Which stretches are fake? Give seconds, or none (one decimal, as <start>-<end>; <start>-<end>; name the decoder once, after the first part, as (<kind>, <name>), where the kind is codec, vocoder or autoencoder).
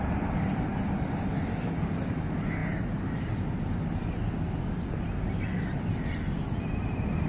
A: none